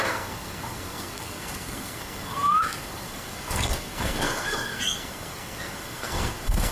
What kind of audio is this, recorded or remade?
remade